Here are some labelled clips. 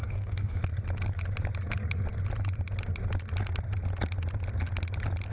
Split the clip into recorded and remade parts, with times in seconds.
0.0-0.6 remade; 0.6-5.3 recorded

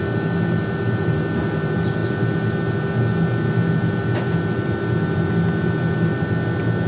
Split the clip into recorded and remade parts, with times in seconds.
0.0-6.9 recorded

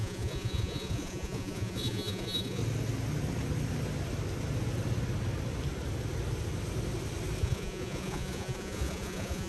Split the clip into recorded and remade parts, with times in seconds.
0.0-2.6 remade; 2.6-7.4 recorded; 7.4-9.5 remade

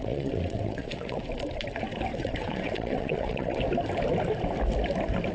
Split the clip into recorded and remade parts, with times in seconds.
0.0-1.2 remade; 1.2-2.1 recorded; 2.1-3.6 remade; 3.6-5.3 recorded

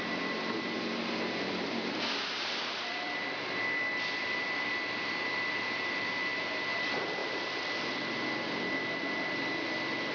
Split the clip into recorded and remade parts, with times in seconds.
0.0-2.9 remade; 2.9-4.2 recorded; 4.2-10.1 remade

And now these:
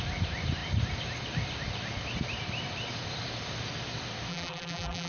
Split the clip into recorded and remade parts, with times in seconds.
0.0-4.3 recorded; 4.3-5.1 remade

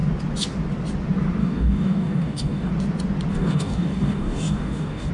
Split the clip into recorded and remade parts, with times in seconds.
0.0-1.4 recorded; 1.4-2.7 remade; 2.7-3.3 recorded; 3.3-5.1 remade